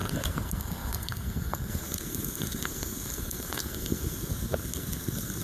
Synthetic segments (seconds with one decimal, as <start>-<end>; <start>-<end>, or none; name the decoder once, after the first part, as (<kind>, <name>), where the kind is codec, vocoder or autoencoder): 0.0-5.4 (codec, SNAC)